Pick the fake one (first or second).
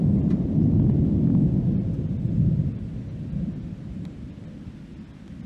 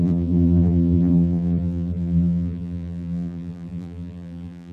second